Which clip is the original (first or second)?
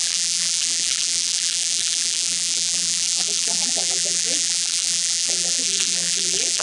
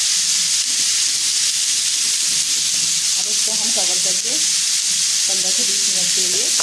second